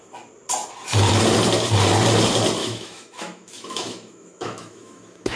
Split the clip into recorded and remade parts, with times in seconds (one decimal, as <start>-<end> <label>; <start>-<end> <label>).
0.0-2.6 recorded; 2.6-5.4 remade

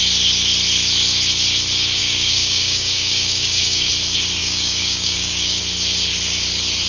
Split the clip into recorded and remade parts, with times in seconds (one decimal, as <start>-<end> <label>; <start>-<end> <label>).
0.0-2.0 recorded; 2.0-3.9 remade; 3.9-4.4 recorded; 4.4-5.6 remade; 5.6-6.9 recorded

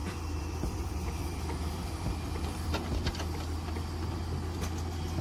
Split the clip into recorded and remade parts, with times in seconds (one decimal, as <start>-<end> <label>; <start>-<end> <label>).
0.0-3.1 remade; 3.1-5.2 recorded

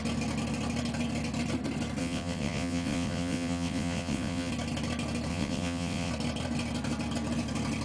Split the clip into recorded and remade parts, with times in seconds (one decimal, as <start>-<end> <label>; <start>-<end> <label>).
0.0-2.0 recorded; 2.0-4.5 remade; 4.5-5.3 recorded; 5.3-6.1 remade; 6.1-7.8 recorded

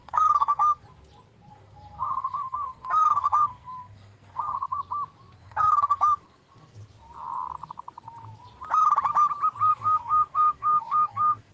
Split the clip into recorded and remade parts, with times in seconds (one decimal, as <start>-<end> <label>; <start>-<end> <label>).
0.0-0.8 remade; 0.8-1.5 recorded; 1.5-4.8 remade; 4.8-5.4 recorded; 5.4-6.8 remade; 6.8-9.7 recorded; 9.7-11.5 remade